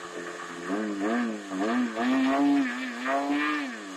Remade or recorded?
recorded